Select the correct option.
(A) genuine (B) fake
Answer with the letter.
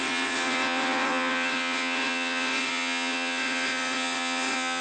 B